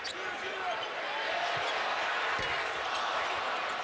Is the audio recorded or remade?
recorded